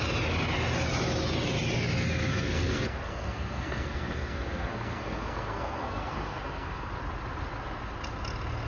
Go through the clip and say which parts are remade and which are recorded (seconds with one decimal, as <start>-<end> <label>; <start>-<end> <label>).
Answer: 0.0-2.3 recorded; 2.3-6.9 remade; 6.9-8.7 recorded